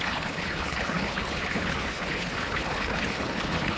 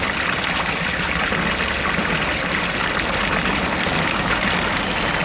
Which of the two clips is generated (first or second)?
first